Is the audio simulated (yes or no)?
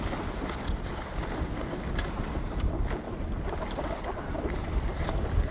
no